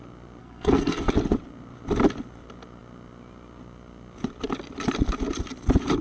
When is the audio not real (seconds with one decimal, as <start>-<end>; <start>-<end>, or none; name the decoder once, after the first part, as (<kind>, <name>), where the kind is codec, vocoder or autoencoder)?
0.4-1.1 (codec, SNAC)